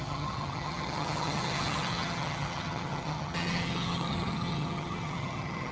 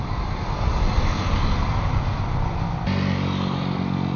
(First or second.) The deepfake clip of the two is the first